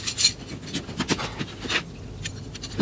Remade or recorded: recorded